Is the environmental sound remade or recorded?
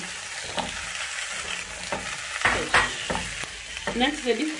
recorded